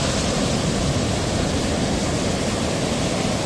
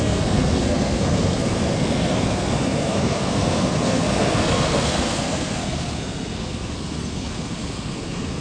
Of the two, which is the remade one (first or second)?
second